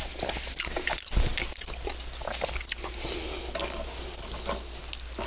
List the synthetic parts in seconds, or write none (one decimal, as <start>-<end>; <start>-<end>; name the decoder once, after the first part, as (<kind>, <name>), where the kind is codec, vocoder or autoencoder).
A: none